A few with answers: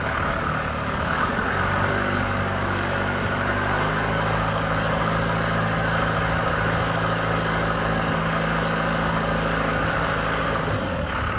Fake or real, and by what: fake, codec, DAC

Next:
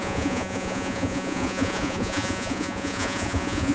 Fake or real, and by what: fake, vocoder, Vocos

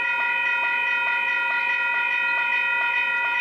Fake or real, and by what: real